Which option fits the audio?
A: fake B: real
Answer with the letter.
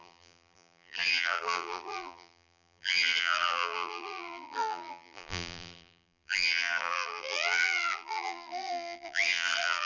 A